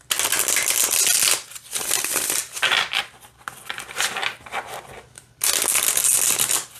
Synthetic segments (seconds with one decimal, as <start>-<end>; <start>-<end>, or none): none